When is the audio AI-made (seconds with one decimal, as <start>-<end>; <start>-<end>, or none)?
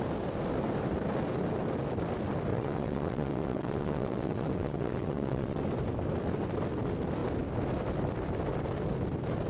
2.5-5.6